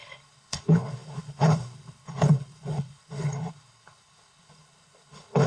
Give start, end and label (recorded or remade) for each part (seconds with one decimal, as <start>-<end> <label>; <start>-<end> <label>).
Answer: 0.0-5.5 remade